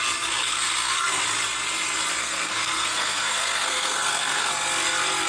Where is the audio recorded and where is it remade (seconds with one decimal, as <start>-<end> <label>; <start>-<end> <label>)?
0.0-0.4 recorded; 0.4-1.2 remade; 1.2-2.2 recorded; 2.2-4.5 remade; 4.5-5.3 recorded